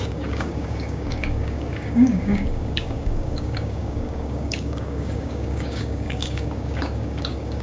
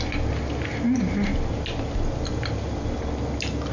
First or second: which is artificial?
first